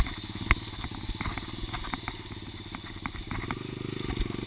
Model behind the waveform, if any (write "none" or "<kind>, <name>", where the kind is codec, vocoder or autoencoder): none